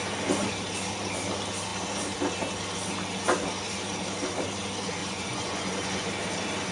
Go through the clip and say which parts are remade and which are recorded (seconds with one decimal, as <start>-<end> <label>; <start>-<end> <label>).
0.0-5.0 recorded; 5.0-6.1 remade; 6.1-6.7 recorded